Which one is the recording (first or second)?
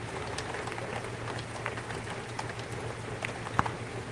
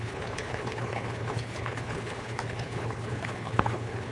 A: first